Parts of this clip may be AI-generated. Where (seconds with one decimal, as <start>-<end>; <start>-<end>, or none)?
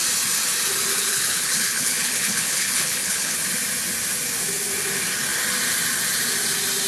0.9-3.4